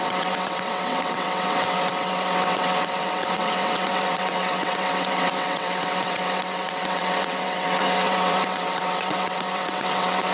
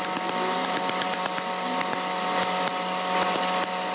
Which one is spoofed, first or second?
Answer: first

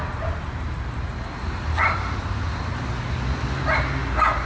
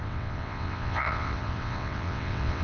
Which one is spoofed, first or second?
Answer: second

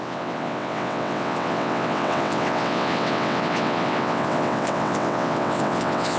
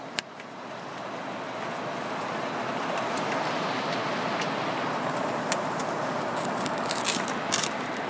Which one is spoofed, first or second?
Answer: first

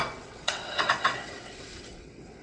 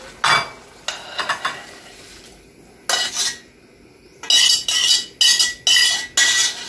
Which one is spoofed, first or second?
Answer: first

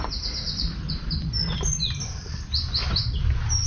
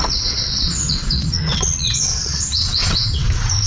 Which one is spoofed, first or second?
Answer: second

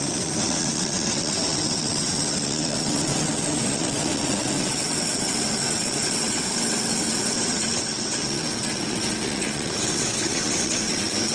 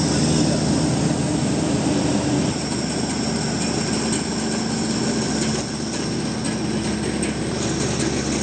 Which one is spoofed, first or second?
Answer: first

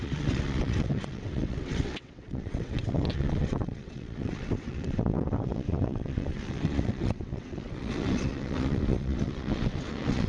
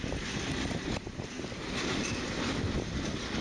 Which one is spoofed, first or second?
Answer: first